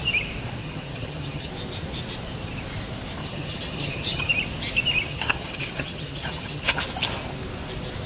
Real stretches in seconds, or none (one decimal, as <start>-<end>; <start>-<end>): 0.0-0.6; 1.5-3.2; 4.3-5.1; 6.8-8.1